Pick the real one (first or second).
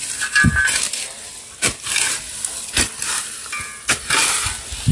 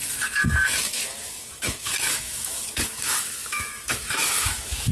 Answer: first